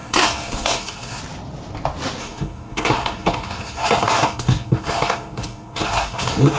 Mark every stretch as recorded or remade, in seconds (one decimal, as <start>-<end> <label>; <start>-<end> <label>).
0.0-1.2 remade; 1.2-2.2 recorded; 2.2-6.6 remade